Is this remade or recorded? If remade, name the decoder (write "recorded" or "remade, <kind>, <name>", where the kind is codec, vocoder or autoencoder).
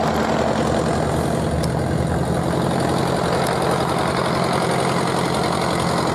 recorded